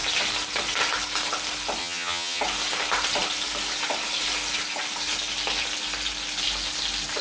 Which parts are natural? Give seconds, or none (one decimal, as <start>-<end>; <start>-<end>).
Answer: 0.0-1.8; 2.4-7.2